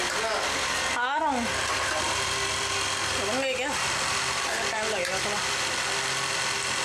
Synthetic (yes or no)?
no